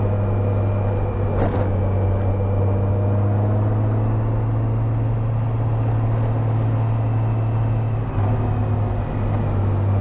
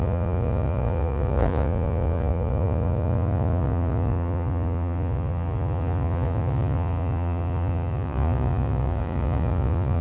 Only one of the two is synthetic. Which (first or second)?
second